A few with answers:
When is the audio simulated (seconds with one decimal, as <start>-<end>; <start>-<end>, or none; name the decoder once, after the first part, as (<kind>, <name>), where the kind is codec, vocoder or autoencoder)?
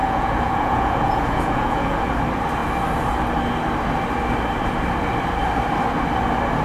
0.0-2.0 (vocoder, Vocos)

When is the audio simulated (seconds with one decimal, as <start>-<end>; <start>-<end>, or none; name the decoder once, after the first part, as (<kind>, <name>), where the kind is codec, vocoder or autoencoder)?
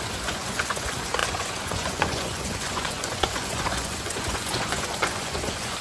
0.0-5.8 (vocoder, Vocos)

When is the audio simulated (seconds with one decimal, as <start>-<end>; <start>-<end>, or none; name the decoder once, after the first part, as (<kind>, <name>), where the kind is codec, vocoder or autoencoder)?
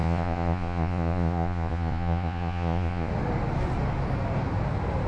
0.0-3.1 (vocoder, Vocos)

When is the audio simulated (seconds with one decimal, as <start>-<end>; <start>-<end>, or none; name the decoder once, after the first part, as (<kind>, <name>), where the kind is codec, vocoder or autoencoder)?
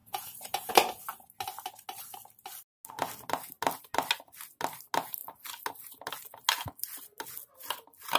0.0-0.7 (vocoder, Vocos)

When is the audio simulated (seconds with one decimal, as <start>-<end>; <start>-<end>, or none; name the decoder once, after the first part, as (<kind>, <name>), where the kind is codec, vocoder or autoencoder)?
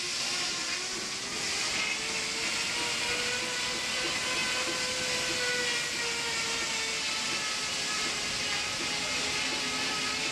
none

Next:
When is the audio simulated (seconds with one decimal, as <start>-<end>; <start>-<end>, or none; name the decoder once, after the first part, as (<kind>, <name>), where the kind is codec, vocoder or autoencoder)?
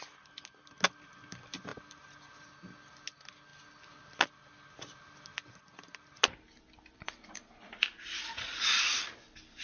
7.9-8.9 (vocoder, Vocos)